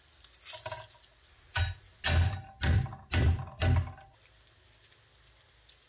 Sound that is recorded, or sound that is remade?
recorded